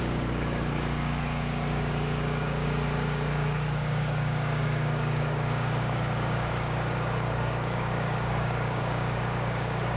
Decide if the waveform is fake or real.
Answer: fake